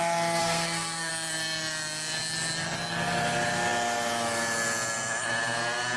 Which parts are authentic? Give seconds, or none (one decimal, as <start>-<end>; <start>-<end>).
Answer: 0.0-0.4; 1.1-6.0